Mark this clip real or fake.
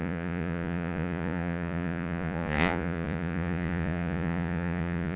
fake